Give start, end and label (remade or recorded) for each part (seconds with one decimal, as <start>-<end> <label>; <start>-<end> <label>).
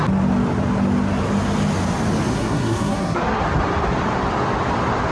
0.0-2.3 recorded; 2.3-3.4 remade; 3.4-5.1 recorded